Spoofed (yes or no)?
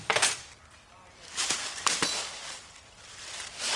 no